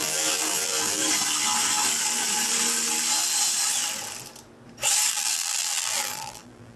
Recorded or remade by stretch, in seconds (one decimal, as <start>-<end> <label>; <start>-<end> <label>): 0.0-1.0 remade; 1.0-5.1 recorded; 5.1-6.8 remade